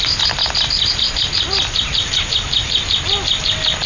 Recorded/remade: recorded